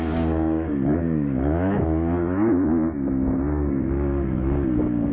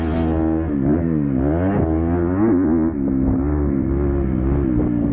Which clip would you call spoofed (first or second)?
first